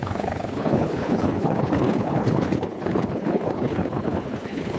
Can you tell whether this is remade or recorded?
remade